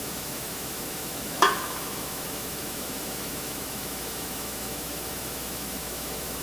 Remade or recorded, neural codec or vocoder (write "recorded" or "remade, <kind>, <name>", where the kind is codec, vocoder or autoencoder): remade, autoencoder, DAC-VAE